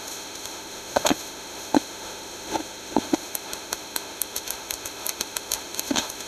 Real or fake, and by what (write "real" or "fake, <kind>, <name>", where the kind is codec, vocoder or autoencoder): fake, autoencoder, DAC-VAE